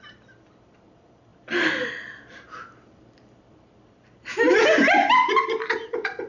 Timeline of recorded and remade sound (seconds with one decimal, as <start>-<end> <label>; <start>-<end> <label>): 0.0-6.3 remade